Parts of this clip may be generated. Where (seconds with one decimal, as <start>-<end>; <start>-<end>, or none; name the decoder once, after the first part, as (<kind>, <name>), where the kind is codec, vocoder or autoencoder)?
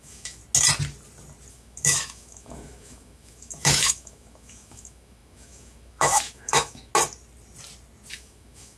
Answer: 0.0-0.4 (autoencoder, DAC-VAE); 1.5-6.9; 8.1-8.8